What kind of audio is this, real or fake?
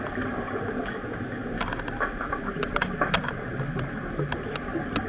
real